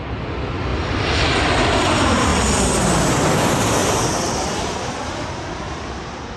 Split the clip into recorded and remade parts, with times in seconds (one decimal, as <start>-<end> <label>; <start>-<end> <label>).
0.0-0.7 recorded; 0.7-1.9 remade; 1.9-3.8 recorded; 3.8-4.8 remade; 4.8-6.4 recorded